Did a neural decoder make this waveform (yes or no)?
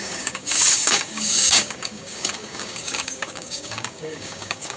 yes